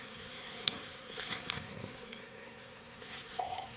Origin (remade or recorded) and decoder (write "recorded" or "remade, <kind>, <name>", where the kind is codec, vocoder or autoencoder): remade, codec, SNAC